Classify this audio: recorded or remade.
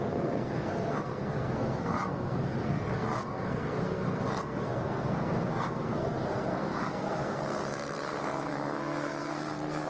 remade